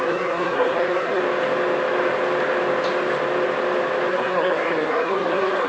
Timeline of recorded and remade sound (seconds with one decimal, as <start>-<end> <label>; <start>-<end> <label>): 0.0-1.2 remade; 1.2-4.1 recorded; 4.1-5.7 remade